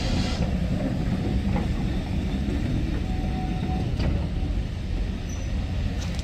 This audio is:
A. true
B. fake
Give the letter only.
A